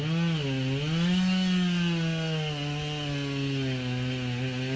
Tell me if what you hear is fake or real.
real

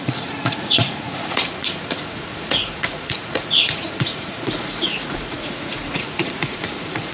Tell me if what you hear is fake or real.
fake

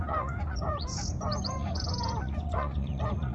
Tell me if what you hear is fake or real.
fake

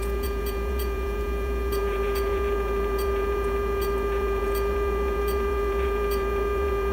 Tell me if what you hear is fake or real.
fake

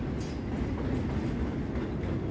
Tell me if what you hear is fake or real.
real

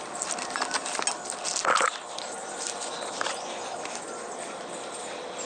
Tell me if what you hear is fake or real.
real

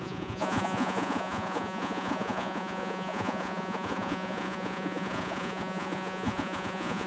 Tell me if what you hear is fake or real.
fake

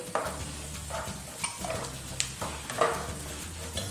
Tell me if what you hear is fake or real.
real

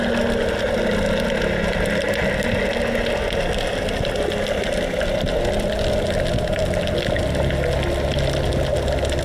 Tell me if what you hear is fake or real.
real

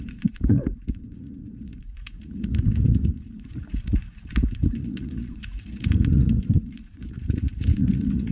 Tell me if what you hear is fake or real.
fake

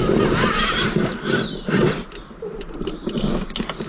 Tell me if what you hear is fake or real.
real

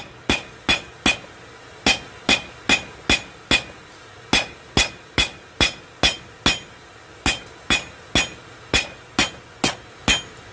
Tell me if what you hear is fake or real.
real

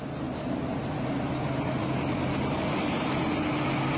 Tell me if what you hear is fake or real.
real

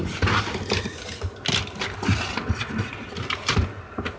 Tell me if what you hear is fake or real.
real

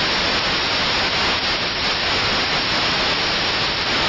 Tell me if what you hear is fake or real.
real